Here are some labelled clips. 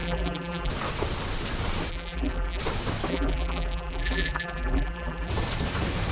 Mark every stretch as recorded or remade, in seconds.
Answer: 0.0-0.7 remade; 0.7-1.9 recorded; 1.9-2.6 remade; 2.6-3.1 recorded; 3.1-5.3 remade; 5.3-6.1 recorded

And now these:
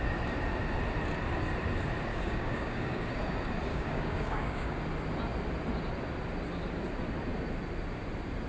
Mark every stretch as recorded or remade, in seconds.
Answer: 0.0-2.1 recorded; 2.1-3.2 remade; 3.2-3.7 recorded; 3.7-4.8 remade; 4.8-8.5 recorded

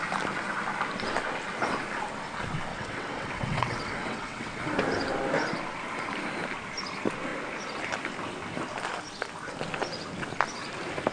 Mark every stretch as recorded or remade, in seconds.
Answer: 0.0-2.7 recorded; 2.7-4.6 remade; 4.6-11.1 recorded